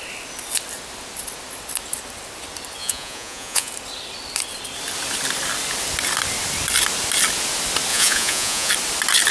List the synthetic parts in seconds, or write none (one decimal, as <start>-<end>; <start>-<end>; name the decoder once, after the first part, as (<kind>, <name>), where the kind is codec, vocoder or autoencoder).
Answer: 2.8-3.7 (vocoder, Vocos); 7.9-8.7